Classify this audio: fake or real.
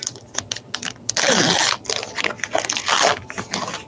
real